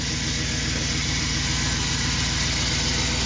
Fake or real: real